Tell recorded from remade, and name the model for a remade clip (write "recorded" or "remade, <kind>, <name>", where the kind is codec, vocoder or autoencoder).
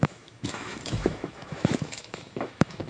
remade, autoencoder, DAC-VAE